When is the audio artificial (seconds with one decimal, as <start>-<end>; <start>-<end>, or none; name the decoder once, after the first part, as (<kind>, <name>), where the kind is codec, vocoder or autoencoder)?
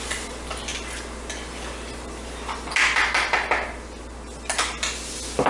none